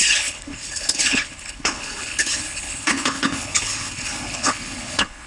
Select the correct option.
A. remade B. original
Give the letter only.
A